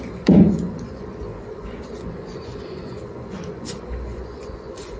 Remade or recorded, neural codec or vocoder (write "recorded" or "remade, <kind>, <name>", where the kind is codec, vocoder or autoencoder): remade, vocoder, Vocos